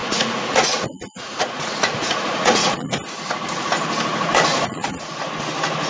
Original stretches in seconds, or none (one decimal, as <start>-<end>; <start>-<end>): 2.9-4.5; 5.0-5.9